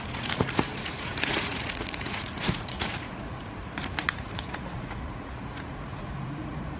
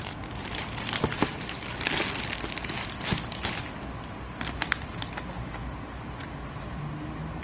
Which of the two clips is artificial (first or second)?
first